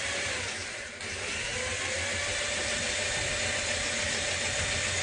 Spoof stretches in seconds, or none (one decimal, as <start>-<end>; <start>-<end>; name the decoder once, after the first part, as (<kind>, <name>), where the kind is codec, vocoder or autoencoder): none